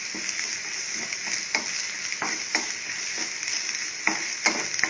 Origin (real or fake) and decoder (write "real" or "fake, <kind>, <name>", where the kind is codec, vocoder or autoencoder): real